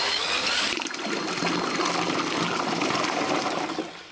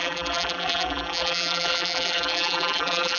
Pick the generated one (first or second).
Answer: second